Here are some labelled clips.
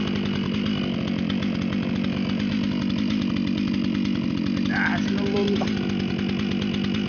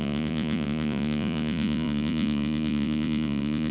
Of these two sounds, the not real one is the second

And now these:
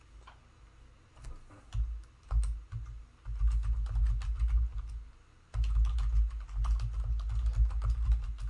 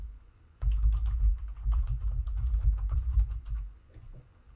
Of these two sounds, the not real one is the second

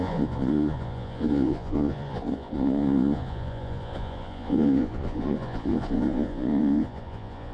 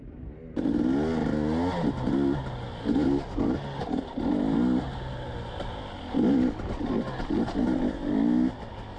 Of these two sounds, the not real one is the first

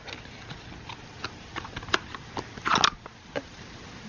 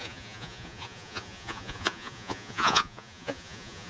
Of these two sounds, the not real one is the second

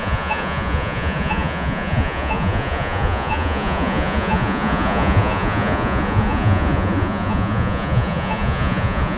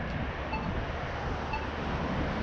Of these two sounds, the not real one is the first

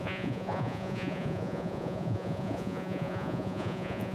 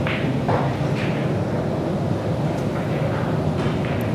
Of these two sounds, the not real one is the first